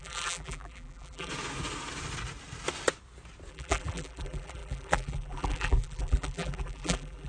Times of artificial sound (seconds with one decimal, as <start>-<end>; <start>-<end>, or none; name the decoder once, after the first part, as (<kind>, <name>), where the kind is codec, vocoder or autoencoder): 0.0-1.3 (vocoder, BigVGAN v2); 3.5-7.3